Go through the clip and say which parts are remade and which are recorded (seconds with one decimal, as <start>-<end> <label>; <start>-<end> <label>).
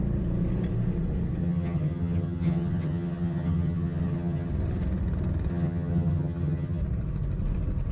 0.0-1.4 recorded; 1.4-4.5 remade; 4.5-5.5 recorded; 5.5-6.8 remade; 6.8-7.9 recorded